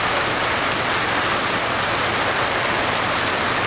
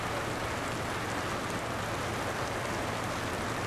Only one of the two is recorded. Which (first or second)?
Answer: second